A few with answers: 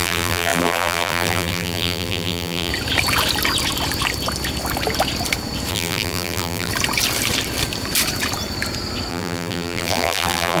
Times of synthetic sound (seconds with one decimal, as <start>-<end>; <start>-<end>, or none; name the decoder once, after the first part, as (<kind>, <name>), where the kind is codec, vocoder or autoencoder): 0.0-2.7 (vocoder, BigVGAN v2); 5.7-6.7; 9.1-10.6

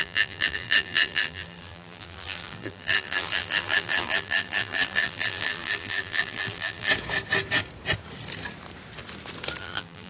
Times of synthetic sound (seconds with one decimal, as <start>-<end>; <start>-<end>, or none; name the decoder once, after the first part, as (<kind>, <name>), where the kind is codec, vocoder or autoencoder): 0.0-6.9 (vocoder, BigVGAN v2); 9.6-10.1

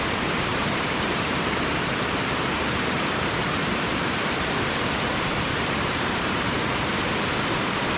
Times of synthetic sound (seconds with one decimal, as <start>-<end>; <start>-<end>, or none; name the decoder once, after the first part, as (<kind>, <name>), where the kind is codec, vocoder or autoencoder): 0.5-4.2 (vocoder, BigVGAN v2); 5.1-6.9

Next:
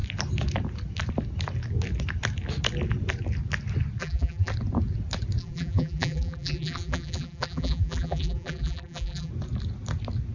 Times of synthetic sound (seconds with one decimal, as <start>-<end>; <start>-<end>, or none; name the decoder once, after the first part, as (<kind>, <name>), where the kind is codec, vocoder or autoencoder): 4.0-4.5 (vocoder, BigVGAN v2); 5.4-9.3